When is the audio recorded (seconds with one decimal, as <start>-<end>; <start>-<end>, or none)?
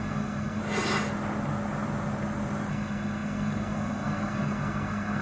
0.6-2.7